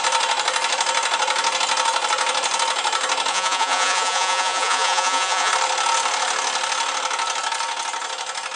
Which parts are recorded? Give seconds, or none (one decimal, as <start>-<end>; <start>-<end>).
0.0-3.3; 5.5-8.6